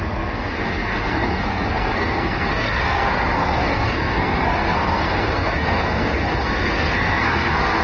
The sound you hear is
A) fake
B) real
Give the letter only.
A